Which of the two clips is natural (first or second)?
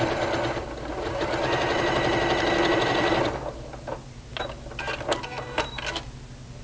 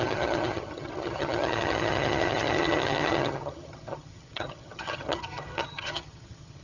first